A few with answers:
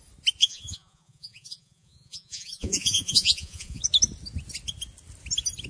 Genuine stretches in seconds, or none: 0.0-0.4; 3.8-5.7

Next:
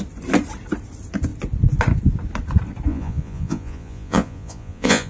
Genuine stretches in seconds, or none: 0.0-2.9

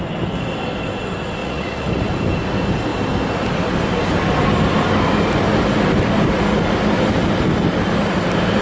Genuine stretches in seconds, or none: 0.0-1.4; 2.1-8.6

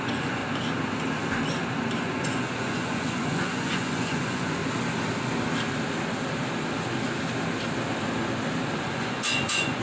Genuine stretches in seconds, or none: 0.4-2.0; 4.6-8.8

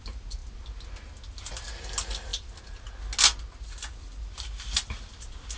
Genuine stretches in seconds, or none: 0.0-5.6

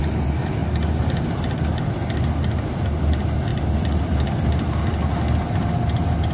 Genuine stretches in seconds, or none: 0.0-6.3

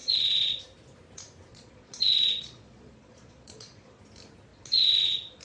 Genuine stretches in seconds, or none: 0.6-1.5; 4.0-4.5